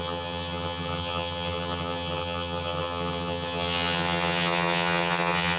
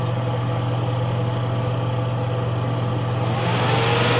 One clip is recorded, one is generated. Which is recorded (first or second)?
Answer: second